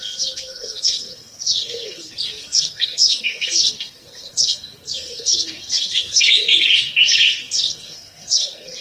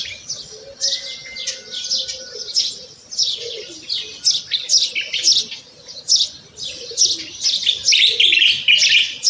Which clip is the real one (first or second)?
second